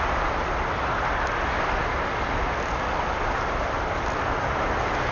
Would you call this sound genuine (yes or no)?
yes